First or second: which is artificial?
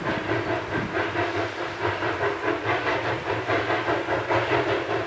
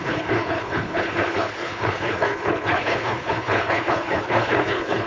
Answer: second